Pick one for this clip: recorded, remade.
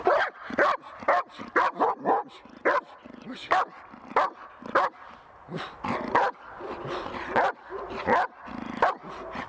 recorded